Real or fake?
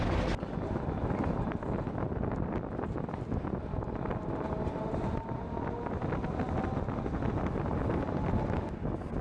real